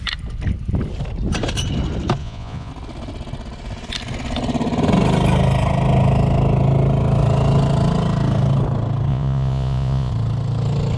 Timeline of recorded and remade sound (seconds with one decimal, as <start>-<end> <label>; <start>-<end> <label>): 0.0-2.2 recorded; 2.2-2.7 remade; 2.7-9.1 recorded; 9.1-10.1 remade; 10.1-11.0 recorded